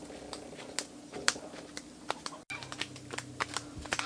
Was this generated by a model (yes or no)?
no